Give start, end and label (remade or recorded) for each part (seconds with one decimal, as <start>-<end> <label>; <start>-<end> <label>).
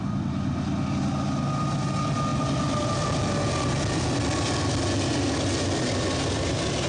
0.0-6.9 recorded